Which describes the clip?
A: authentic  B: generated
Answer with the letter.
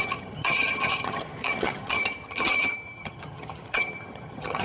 B